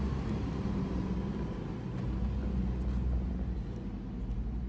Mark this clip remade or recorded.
recorded